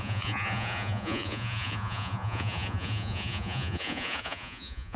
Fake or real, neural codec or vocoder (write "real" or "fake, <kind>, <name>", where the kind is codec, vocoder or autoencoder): fake, vocoder, Vocos